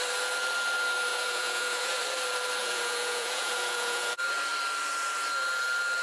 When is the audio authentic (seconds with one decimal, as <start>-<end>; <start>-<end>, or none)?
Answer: 0.0-1.1; 2.0-2.6; 4.1-6.0